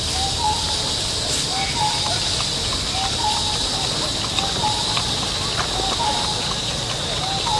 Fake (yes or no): no